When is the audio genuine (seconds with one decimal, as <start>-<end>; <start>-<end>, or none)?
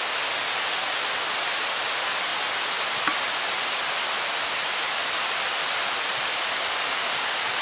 0.0-7.6